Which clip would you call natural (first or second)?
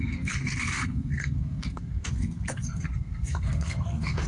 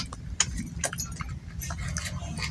second